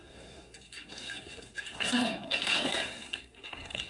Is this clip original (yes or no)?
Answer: no